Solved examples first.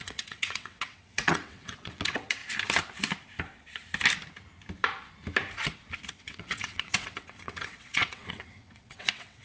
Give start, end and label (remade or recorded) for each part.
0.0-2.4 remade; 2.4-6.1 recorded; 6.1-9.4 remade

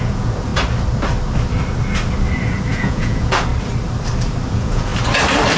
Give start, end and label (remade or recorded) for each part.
0.0-0.5 remade; 0.5-2.7 recorded; 2.7-3.5 remade; 3.5-4.5 recorded; 4.5-4.9 remade; 4.9-5.6 recorded

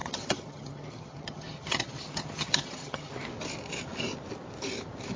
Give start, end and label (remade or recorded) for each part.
0.0-3.1 remade; 3.1-5.2 recorded